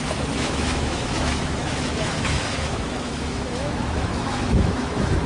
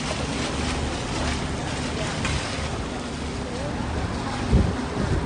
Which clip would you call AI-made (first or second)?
first